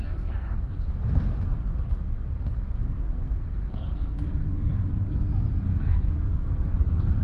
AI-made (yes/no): yes